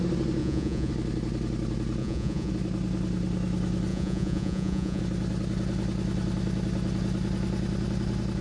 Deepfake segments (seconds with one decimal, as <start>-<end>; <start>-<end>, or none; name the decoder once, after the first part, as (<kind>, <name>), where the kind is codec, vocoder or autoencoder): 0.4-0.9 (vocoder, Vocos); 2.0-2.5; 3.9-5.0